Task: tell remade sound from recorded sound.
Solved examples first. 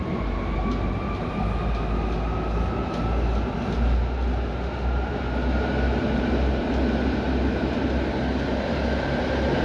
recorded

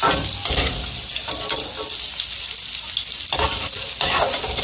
recorded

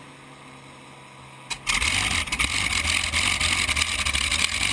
recorded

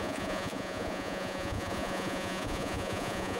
remade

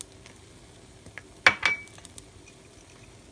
recorded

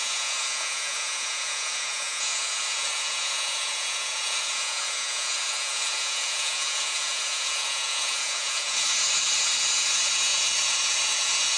remade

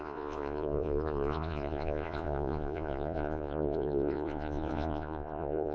remade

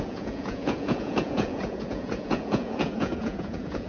remade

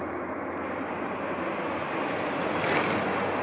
recorded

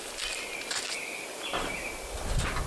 recorded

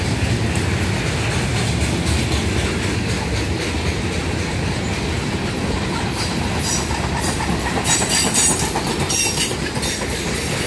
recorded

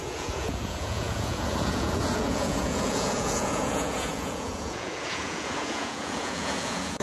remade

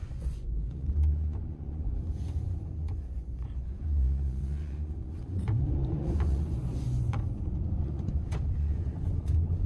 remade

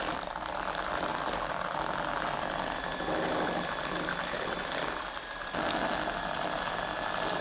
recorded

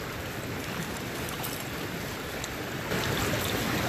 recorded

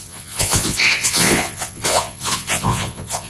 remade